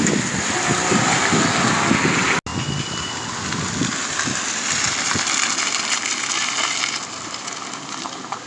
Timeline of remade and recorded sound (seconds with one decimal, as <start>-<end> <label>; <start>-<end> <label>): 0.0-8.5 recorded